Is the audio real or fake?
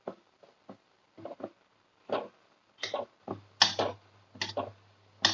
real